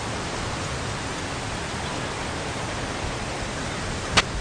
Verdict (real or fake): real